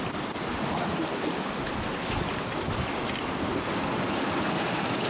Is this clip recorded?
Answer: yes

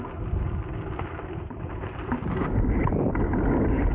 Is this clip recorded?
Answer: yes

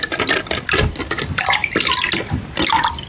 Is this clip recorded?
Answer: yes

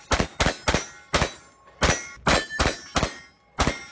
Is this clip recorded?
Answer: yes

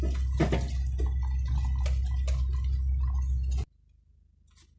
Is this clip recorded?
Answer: yes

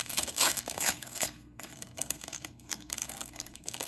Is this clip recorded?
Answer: no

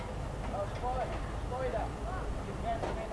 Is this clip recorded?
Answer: yes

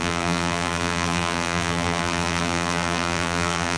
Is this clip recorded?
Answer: no